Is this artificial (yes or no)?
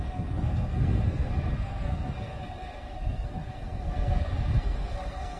yes